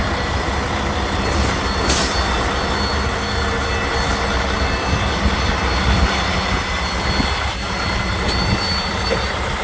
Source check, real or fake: real